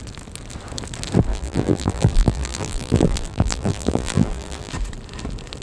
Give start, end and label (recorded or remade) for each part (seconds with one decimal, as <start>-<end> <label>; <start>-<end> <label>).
0.0-1.3 recorded; 1.3-4.7 remade; 4.7-5.6 recorded